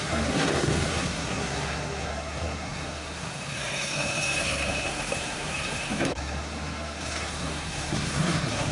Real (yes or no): no